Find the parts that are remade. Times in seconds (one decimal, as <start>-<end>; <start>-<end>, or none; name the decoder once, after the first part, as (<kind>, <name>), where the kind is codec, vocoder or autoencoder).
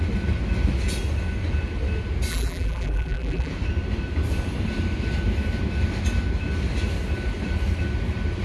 2.3-3.5 (vocoder, BigVGAN v2)